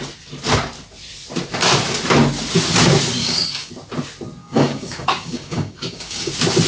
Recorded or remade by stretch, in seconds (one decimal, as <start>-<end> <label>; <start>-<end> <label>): 0.0-3.2 recorded; 3.2-3.7 remade; 3.7-4.4 recorded; 4.4-6.3 remade; 6.3-6.7 recorded